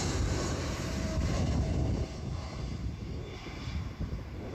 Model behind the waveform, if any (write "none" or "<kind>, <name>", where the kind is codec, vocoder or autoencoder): vocoder, BigVGAN v2